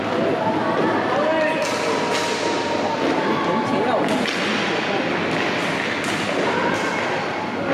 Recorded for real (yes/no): yes